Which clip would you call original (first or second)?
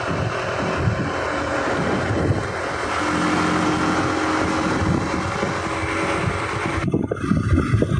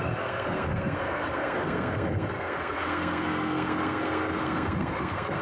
first